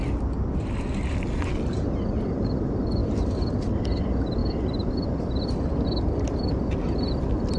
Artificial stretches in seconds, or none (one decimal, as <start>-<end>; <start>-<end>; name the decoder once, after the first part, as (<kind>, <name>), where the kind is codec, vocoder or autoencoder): 3.0-3.7 (vocoder, BigVGAN v2); 4.4-5.2